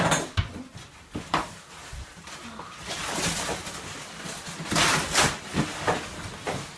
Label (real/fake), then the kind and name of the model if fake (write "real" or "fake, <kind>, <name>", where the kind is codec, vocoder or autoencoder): real